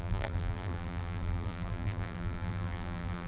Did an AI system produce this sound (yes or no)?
yes